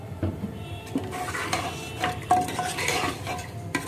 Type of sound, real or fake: fake